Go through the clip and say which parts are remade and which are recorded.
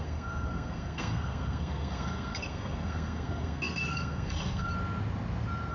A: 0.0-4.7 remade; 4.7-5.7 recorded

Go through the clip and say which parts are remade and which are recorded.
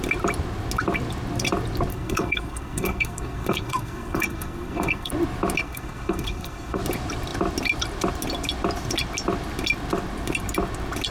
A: 0.0-1.9 recorded; 1.9-5.1 remade; 5.1-5.6 recorded; 5.6-6.8 remade; 6.8-11.1 recorded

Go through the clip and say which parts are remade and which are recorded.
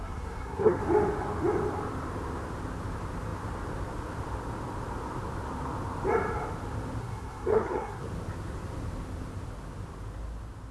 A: 0.0-0.8 remade; 0.8-7.0 recorded; 7.0-8.0 remade; 8.0-10.7 recorded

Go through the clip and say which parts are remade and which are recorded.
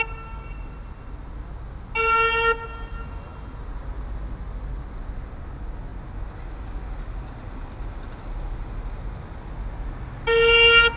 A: 0.0-11.0 recorded